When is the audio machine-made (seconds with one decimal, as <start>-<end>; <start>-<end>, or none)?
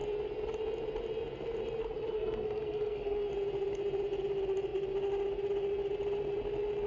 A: 1.8-3.3